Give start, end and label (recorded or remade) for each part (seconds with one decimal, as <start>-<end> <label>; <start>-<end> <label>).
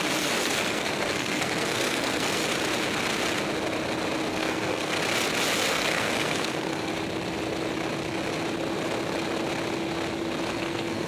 0.0-2.4 remade; 2.4-4.3 recorded; 4.3-4.9 remade; 4.9-5.7 recorded; 5.7-6.9 remade; 6.9-10.5 recorded; 10.5-11.1 remade